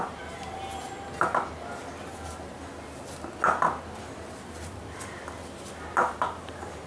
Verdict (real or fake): real